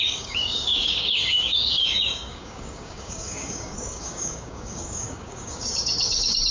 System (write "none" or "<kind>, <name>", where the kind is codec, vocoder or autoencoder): codec, DAC